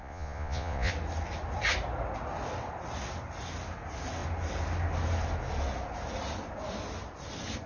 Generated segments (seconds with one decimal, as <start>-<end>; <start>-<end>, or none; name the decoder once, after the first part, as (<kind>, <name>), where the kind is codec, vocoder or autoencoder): 0.0-0.9 (vocoder, Vocos)